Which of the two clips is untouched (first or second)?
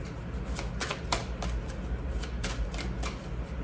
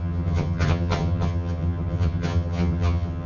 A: first